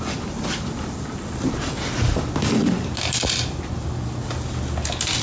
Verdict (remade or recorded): recorded